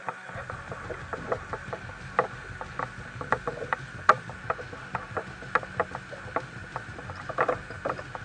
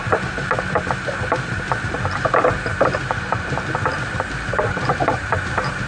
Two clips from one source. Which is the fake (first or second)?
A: second